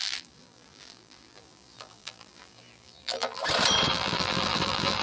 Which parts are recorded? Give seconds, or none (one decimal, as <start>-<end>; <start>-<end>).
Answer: 3.4-3.9